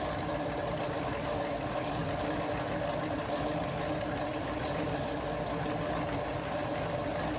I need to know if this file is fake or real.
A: real